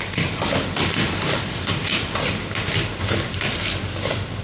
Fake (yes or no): no